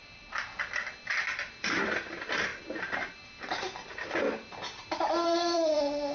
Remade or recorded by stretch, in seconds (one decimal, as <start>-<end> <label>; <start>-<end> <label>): 0.0-6.1 remade